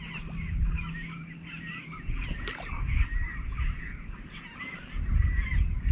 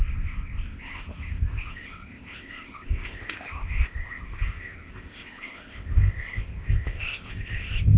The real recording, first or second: first